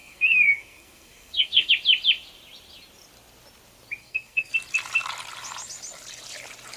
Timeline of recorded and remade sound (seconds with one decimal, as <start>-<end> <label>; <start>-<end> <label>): 0.0-1.7 remade; 1.7-4.0 recorded; 4.0-4.5 remade; 4.5-6.8 recorded